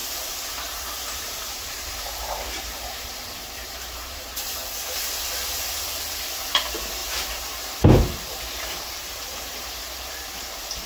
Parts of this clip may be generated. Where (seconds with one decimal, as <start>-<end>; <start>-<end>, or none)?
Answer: 0.0-5.0; 7.0-10.4